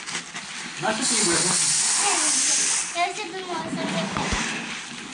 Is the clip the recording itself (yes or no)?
yes